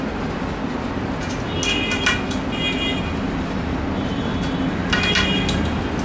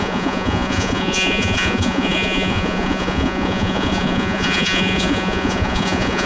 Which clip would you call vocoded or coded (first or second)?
second